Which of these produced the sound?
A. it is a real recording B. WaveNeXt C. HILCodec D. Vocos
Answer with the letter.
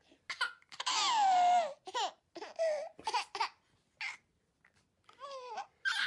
A